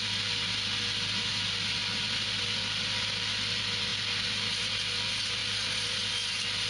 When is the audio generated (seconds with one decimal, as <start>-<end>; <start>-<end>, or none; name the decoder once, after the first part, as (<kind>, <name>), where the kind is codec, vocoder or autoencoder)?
none